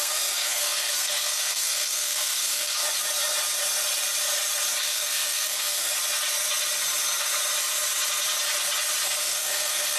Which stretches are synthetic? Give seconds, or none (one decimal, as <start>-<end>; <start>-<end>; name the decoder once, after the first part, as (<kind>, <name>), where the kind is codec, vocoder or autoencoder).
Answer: 0.0-2.8 (codec, SNAC); 4.8-5.9; 9.2-10.0